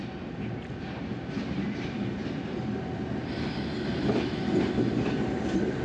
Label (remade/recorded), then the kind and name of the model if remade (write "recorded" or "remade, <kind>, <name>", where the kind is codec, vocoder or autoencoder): recorded